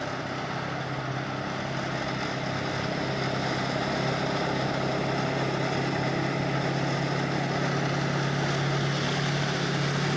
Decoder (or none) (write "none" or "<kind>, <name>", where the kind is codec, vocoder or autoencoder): none